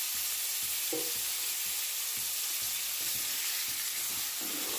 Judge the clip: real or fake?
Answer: real